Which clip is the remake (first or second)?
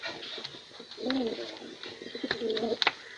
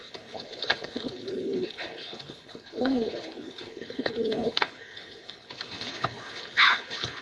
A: second